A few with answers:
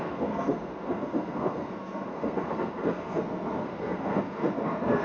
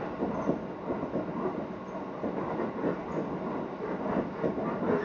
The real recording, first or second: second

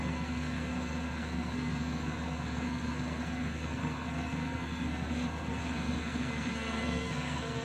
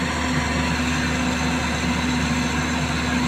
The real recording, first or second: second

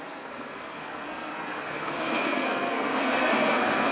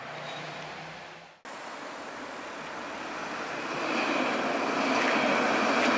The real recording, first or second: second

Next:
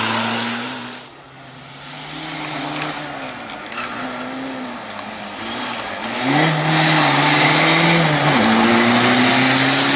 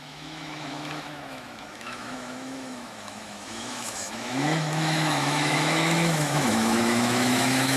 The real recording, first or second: first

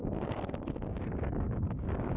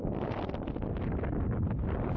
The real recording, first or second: second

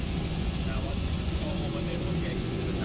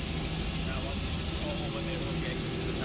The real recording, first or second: second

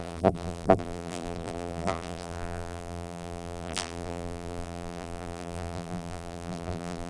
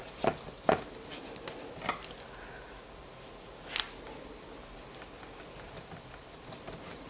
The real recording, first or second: second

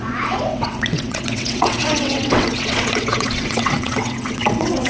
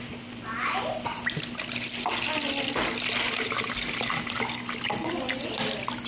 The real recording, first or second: second